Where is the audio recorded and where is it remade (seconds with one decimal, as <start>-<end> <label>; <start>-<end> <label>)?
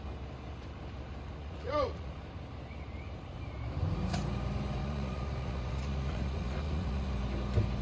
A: 0.0-1.4 recorded; 1.4-2.1 remade; 2.1-4.8 recorded; 4.8-7.1 remade; 7.1-7.8 recorded